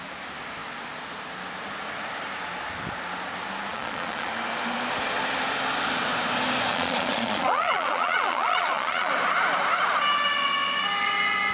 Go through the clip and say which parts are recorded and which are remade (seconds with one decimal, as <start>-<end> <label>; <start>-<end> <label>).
0.0-3.7 recorded; 3.7-4.3 remade; 4.3-6.7 recorded; 6.7-9.1 remade; 9.1-11.5 recorded